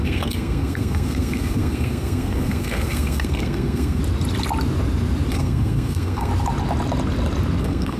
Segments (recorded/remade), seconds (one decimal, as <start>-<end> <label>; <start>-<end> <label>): 0.0-4.0 remade; 4.0-5.3 recorded; 5.3-6.3 remade; 6.3-7.6 recorded; 7.6-8.0 remade